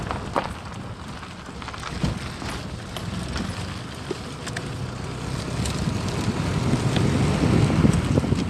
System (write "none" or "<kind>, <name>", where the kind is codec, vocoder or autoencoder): none